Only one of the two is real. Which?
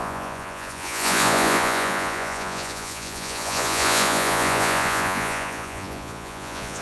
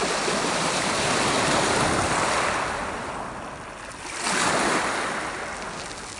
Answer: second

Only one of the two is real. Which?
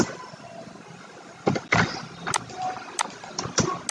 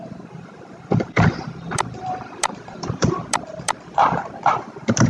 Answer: first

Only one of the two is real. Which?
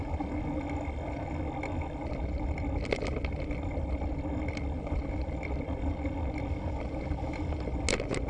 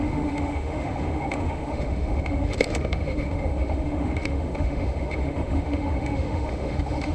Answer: first